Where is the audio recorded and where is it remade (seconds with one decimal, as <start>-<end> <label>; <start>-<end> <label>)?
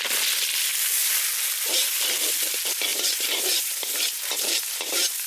0.0-2.9 recorded; 2.9-5.3 remade